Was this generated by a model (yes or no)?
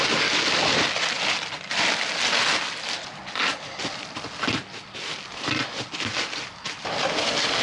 no